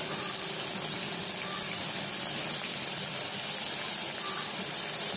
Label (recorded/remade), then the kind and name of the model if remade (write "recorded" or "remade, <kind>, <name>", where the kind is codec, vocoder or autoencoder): recorded